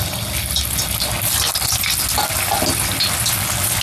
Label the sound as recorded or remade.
recorded